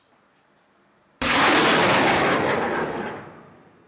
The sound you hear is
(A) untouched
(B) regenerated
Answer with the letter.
A